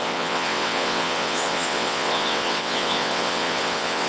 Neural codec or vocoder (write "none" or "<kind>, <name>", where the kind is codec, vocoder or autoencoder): vocoder, WaveNeXt